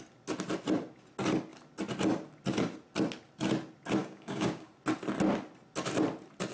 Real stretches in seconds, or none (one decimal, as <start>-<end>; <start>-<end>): 0.0-4.0; 4.7-6.5